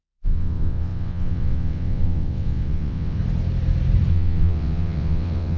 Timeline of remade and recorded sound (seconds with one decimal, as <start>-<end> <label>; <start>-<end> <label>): 0.0-3.2 remade; 3.2-4.1 recorded; 4.1-5.6 remade

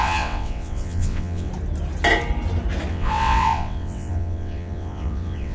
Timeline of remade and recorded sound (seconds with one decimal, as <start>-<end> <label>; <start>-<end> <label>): 0.0-1.5 remade; 1.5-2.9 recorded; 2.9-5.5 remade

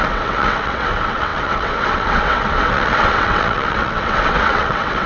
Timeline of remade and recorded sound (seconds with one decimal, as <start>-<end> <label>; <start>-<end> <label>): 0.0-5.1 remade

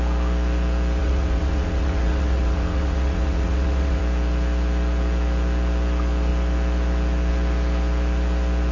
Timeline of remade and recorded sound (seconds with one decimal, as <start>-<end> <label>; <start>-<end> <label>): 0.0-1.0 recorded; 1.0-4.0 remade; 4.0-8.7 recorded

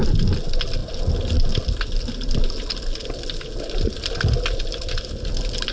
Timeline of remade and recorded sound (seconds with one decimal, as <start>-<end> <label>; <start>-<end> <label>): 0.0-5.7 recorded